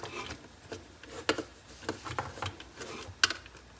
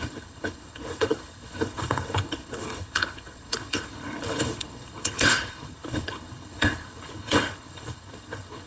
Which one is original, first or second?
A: first